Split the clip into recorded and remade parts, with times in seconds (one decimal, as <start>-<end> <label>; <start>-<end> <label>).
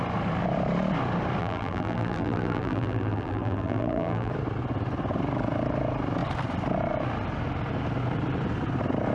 0.0-1.4 recorded; 1.4-4.3 remade; 4.3-9.1 recorded